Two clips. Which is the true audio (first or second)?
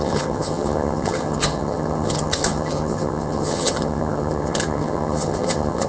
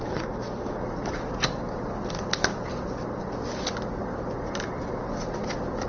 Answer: second